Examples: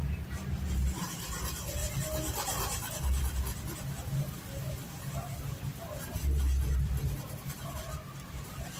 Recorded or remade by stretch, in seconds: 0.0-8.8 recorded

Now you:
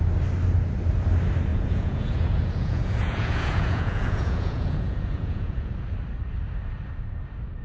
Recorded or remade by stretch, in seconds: 0.0-1.5 recorded; 1.5-5.7 remade; 5.7-7.6 recorded

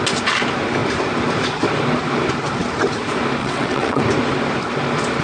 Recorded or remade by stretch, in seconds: 0.0-3.4 recorded; 3.4-4.0 remade; 4.0-5.2 recorded

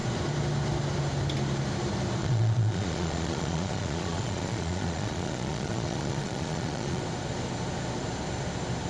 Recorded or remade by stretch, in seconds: 0.0-2.2 recorded; 2.2-7.0 remade; 7.0-8.9 recorded

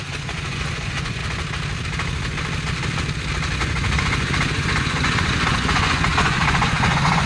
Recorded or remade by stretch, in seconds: 0.0-1.2 remade; 1.2-3.6 recorded; 3.6-7.3 remade